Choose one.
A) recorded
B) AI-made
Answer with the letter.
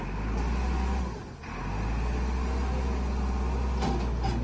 A